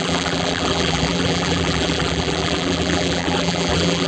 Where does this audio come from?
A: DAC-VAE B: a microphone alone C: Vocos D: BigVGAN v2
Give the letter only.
D